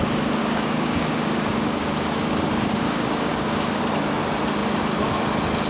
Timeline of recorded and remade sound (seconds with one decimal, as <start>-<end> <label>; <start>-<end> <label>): 0.0-0.4 recorded; 0.4-3.8 remade; 3.8-5.7 recorded